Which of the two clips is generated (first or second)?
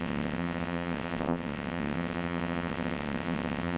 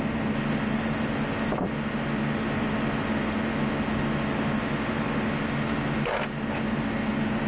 first